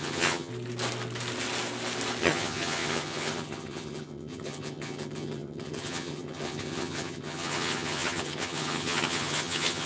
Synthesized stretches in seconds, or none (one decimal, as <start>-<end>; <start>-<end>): 0.0-0.5; 2.2-9.9